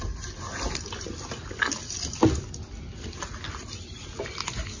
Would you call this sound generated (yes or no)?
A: no